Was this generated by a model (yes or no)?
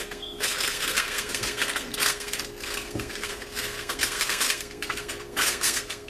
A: yes